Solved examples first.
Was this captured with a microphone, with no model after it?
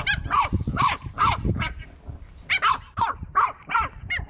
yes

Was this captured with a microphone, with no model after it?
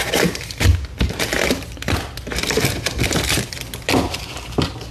yes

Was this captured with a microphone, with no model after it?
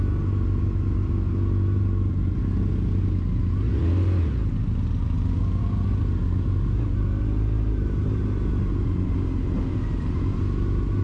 yes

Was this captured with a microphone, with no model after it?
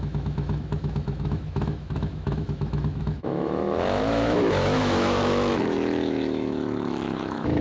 no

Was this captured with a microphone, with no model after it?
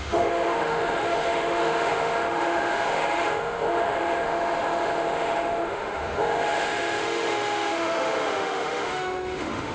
no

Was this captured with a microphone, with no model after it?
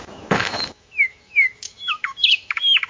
no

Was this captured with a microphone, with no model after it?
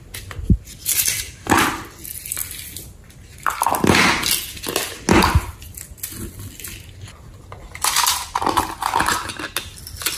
yes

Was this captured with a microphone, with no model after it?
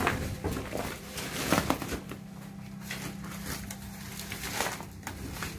yes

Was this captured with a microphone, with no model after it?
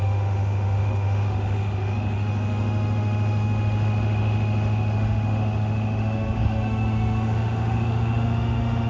no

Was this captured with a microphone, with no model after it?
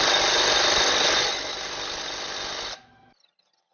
yes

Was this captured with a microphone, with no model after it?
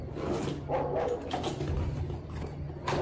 yes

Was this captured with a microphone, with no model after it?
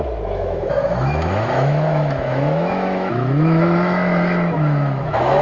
no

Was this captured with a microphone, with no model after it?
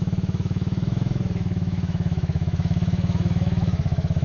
no